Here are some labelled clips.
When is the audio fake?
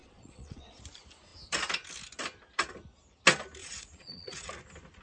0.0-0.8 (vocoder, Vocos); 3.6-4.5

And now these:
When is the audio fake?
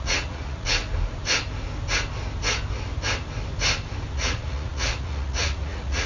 0.0-0.8 (vocoder, Vocos); 4.1-6.1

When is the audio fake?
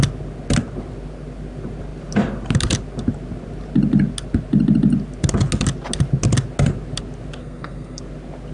7.4-8.0 (codec, SNAC)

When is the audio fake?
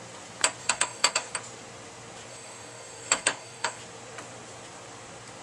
0.6-1.3 (codec, DAC); 2.3-3.8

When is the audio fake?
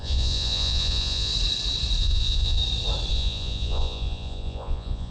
0.0-1.3 (vocoder, Vocos); 2.0-2.6; 3.1-5.1